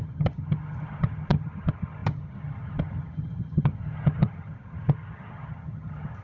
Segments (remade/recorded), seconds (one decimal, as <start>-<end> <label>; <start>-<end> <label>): 0.0-6.2 remade